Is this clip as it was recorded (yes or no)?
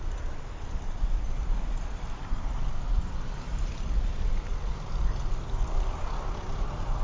no